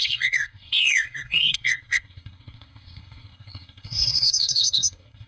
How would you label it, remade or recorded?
remade